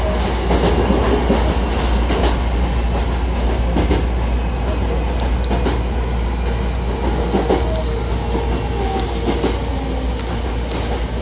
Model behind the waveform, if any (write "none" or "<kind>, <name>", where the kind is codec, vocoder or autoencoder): none